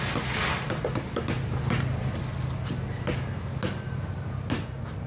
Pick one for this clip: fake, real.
real